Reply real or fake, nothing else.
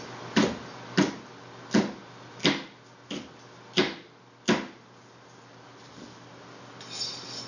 real